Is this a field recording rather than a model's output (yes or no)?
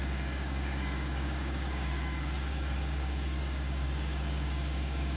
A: no